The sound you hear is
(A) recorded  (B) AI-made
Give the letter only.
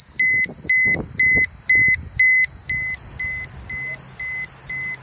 A